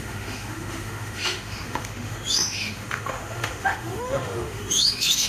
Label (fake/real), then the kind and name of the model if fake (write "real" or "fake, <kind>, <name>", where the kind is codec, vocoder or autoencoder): fake, autoencoder, DAC-VAE